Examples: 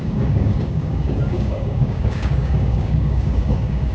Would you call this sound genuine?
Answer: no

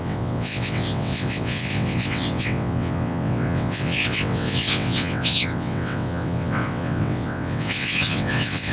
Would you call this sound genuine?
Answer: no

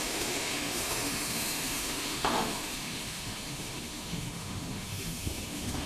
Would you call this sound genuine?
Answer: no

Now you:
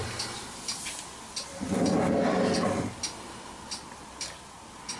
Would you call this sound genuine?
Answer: yes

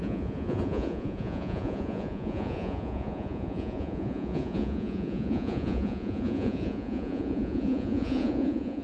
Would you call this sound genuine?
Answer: no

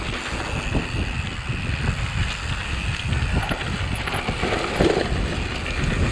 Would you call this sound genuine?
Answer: yes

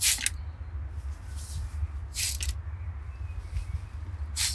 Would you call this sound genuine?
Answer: yes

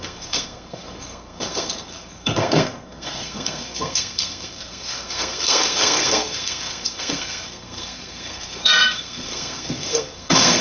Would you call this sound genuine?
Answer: no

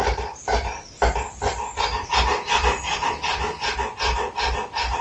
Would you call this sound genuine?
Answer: yes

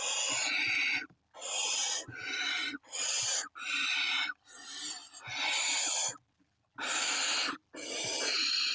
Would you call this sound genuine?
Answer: yes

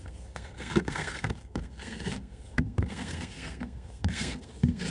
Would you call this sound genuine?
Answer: no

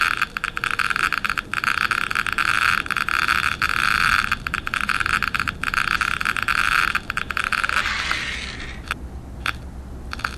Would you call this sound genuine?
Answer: yes